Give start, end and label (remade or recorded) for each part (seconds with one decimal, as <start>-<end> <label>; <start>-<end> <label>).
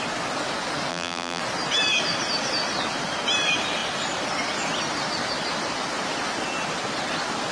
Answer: 0.0-0.9 recorded; 0.9-1.4 remade; 1.4-7.5 recorded